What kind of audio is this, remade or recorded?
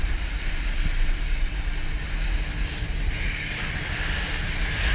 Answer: recorded